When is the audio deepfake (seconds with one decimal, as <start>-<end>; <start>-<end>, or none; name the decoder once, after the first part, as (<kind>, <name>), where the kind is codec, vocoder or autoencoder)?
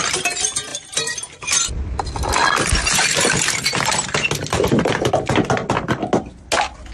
0.7-2.2 (vocoder, BigVGAN v2); 4.4-5.3